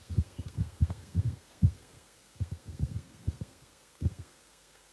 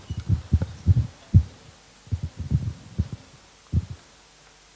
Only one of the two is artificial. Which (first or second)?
first